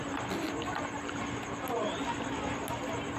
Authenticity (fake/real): real